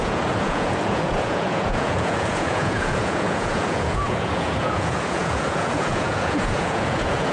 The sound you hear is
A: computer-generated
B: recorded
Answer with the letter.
A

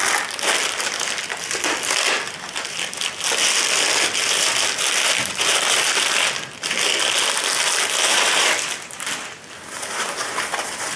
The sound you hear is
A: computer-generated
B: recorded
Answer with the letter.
B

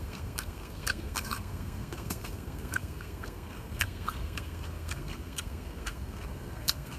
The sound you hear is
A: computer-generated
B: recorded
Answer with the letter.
A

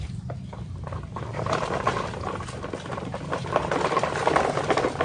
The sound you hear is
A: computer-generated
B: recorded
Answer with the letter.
B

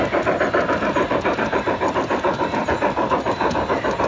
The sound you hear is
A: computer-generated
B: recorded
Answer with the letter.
B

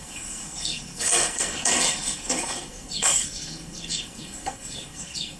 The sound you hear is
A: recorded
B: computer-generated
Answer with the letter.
B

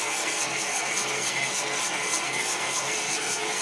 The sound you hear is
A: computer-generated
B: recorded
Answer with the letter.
A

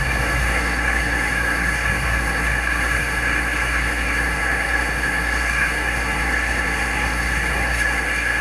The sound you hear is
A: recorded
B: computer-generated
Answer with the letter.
B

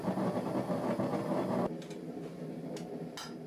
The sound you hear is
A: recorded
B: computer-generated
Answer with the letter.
A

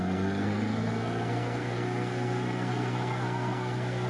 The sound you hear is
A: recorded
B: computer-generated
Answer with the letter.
B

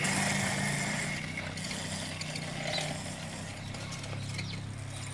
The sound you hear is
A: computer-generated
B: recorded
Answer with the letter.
B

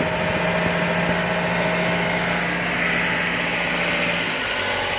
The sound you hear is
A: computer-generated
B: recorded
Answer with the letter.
B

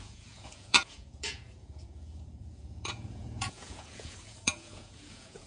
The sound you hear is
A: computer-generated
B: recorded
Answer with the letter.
A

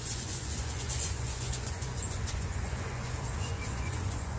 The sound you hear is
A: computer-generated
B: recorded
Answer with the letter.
A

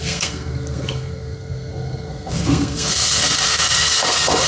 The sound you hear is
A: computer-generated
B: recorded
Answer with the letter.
A